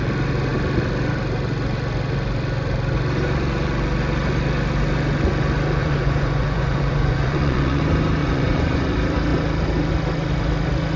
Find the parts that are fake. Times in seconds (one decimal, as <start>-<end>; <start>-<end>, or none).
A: 5.8-7.8; 8.2-8.9